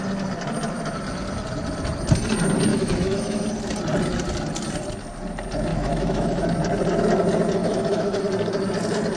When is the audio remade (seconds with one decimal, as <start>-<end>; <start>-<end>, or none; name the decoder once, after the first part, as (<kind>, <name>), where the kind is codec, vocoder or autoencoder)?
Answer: 2.7-3.4 (autoencoder, DAC-VAE); 5.7-6.4; 7.6-8.2